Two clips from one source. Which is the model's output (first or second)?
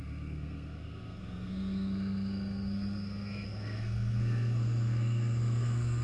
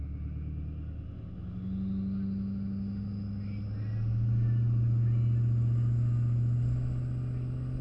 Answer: first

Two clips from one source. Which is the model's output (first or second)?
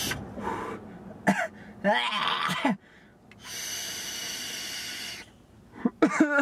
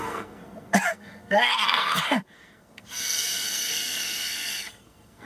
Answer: second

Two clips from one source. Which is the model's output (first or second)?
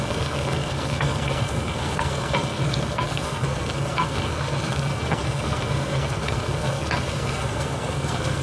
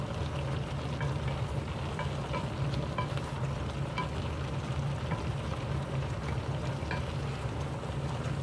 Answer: first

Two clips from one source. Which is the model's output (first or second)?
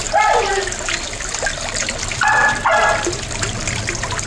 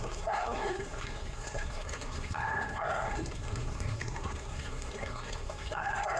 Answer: second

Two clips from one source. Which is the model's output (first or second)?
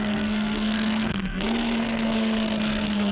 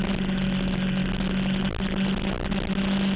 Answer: first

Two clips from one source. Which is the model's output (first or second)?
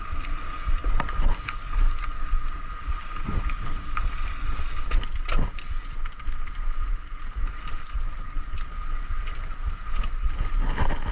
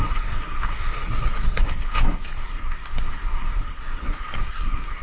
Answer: second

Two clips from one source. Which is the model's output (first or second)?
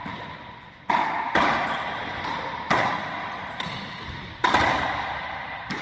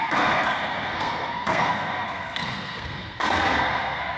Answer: second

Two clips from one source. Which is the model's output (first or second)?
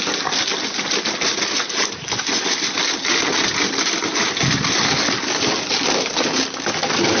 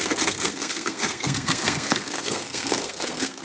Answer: second